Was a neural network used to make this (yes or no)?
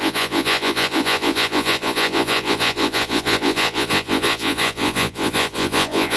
yes